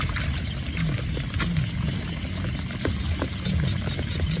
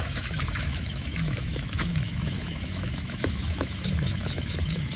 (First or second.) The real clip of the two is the first